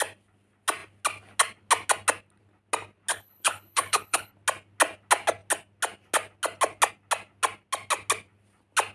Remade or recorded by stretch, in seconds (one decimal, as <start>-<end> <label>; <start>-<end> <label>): 0.0-3.1 recorded; 3.1-4.3 remade; 4.3-8.9 recorded